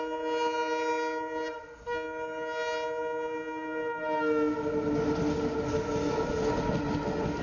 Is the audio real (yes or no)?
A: yes